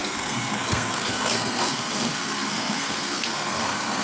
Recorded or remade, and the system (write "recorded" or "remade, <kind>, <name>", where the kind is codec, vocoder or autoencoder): remade, codec, SNAC